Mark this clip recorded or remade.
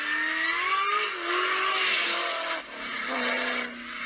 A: recorded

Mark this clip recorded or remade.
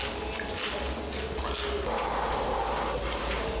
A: recorded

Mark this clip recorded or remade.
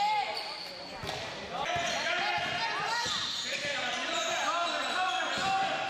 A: recorded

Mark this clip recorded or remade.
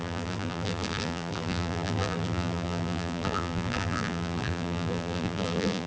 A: remade